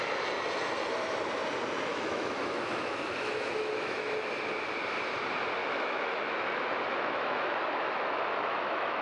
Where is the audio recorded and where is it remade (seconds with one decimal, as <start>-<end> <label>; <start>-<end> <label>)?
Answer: 0.0-1.9 recorded; 1.9-4.1 remade; 4.1-5.6 recorded; 5.6-9.0 remade